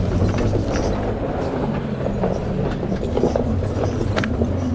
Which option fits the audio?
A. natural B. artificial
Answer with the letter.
A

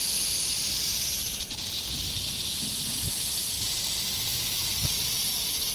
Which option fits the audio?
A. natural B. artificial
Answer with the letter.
A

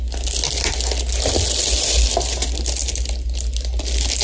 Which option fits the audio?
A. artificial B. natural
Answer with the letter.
B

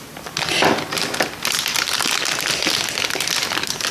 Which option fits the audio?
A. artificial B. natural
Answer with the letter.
B